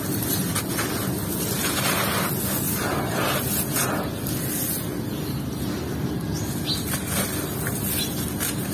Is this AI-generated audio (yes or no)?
no